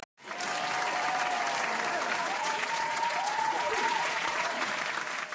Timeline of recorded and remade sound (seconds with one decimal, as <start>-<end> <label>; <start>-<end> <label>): 0.0-2.2 recorded; 2.2-4.7 remade; 4.7-5.3 recorded